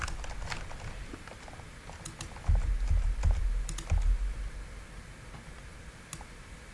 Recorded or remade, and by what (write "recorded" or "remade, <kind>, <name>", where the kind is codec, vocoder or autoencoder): recorded